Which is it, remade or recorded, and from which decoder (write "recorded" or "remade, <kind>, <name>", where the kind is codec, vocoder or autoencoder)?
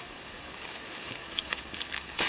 remade, codec, DAC